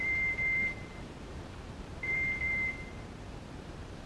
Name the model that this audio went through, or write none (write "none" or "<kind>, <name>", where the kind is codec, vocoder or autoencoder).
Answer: vocoder, BigVGAN v2